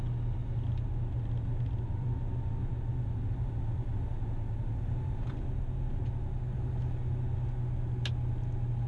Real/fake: real